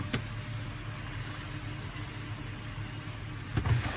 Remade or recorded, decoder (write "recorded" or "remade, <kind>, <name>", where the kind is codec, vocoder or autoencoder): recorded